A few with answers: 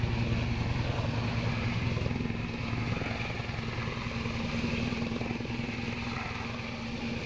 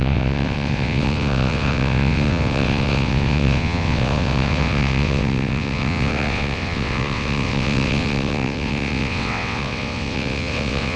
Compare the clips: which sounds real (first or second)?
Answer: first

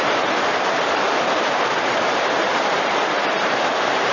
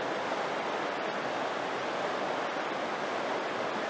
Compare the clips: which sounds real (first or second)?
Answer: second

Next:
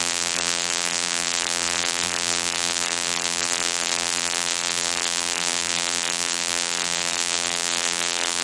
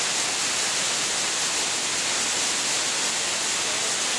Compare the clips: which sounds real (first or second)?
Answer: second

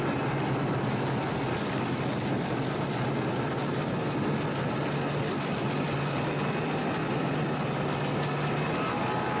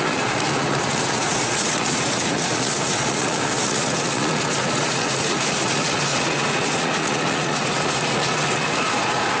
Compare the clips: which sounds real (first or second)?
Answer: first